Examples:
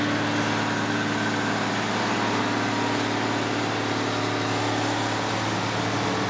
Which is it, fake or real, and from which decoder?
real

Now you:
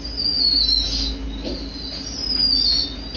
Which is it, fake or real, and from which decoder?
real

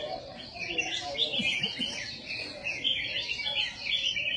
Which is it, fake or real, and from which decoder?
real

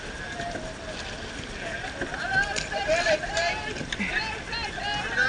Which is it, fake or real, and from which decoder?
real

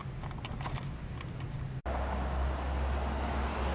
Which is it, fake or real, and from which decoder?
real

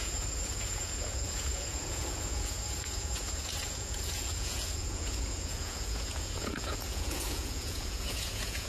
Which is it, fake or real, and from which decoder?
fake, vocoder, Vocos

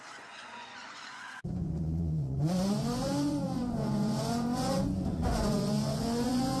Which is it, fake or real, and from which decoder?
fake, vocoder, Vocos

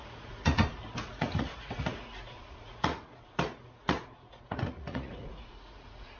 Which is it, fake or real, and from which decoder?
fake, vocoder, Vocos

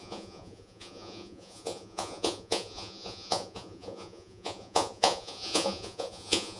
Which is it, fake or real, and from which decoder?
fake, vocoder, Vocos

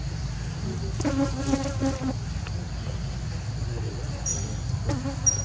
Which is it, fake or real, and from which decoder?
real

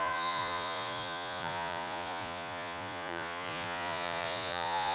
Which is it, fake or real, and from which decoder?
fake, vocoder, Vocos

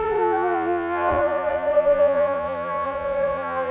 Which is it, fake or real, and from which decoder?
fake, vocoder, Vocos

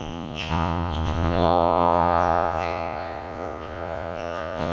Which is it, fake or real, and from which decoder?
fake, vocoder, Vocos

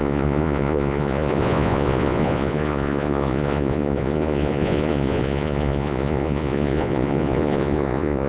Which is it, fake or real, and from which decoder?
fake, vocoder, Vocos